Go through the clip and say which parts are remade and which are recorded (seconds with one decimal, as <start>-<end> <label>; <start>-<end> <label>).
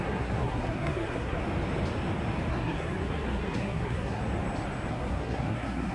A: 0.0-1.4 remade; 1.4-2.5 recorded; 2.5-4.2 remade; 4.2-4.9 recorded; 4.9-5.9 remade